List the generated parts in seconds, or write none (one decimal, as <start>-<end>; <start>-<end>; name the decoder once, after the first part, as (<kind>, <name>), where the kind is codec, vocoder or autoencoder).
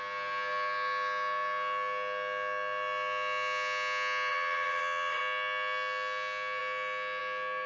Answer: 4.3-5.2 (vocoder, WaveNeXt)